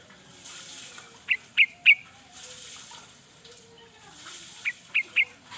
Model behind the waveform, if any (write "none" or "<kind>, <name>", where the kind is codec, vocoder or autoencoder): none